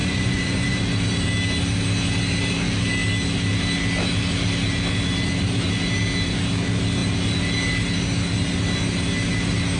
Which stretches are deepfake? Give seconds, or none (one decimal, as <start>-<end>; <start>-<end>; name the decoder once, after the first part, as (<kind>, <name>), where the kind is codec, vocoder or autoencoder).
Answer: 0.0-0.8 (vocoder, Vocos)